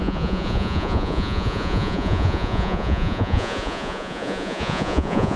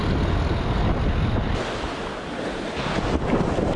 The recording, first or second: second